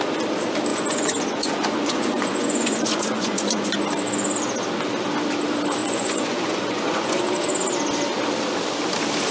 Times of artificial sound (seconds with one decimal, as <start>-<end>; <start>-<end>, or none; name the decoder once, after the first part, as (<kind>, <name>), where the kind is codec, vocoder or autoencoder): 0.7-3.7 (vocoder, Vocos); 5.8-7.2